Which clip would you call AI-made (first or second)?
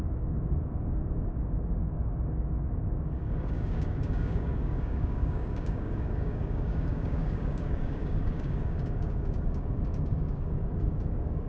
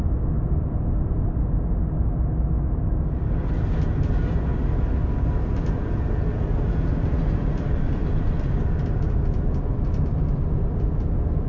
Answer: first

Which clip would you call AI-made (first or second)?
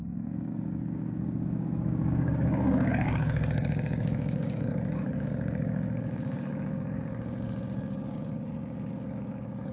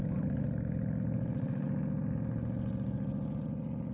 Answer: first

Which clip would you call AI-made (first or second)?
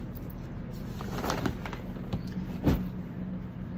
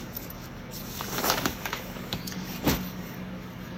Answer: second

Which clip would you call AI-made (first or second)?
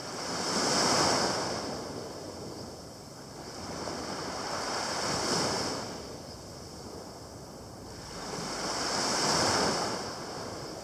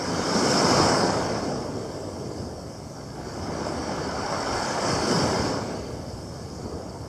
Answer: second